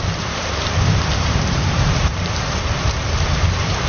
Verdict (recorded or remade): remade